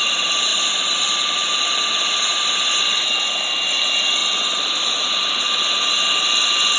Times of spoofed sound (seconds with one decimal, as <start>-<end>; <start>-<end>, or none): none